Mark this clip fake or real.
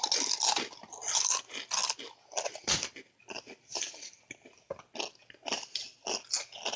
real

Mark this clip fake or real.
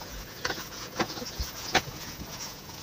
fake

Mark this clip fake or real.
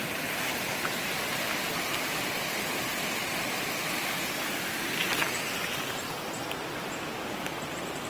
real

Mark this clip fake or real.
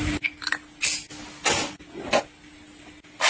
real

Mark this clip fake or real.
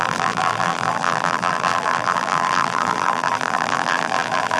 fake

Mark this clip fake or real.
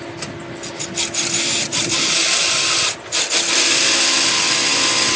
real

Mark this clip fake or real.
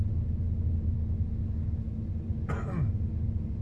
real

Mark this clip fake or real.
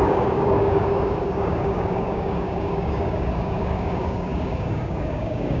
fake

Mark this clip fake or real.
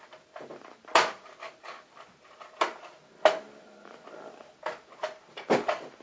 real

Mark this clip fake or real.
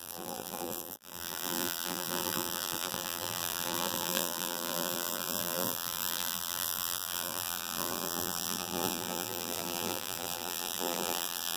fake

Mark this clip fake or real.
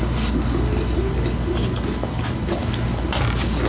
real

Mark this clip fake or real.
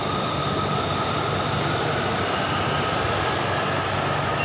real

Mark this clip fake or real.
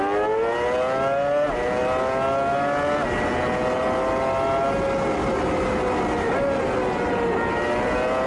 real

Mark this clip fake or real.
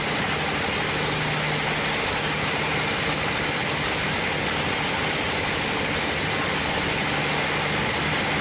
real